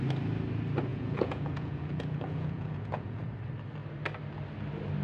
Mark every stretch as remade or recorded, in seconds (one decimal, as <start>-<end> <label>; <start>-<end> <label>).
0.0-0.9 recorded; 0.9-3.3 remade; 3.3-5.0 recorded